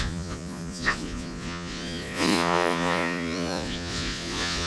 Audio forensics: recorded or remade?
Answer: remade